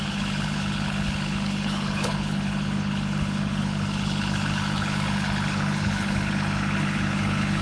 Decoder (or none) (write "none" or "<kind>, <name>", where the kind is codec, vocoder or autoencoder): codec, HILCodec